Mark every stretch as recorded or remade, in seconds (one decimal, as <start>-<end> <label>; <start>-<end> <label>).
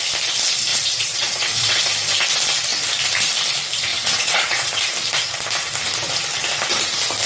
0.0-0.7 recorded; 0.7-1.8 remade; 1.8-3.9 recorded; 3.9-4.8 remade; 4.8-7.3 recorded